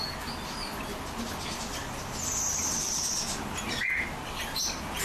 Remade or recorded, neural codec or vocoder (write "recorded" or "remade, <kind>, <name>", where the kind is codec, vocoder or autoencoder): recorded